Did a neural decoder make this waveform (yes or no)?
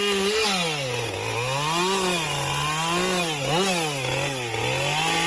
no